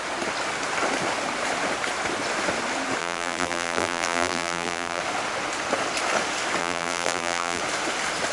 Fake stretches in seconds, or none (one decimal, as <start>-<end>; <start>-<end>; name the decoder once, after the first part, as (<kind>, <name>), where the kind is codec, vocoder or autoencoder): 3.0-5.0 (vocoder, BigVGAN v2); 6.6-7.6